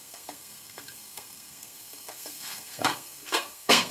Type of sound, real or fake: fake